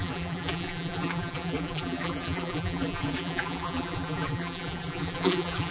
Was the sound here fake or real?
fake